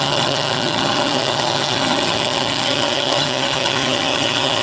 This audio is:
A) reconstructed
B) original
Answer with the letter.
A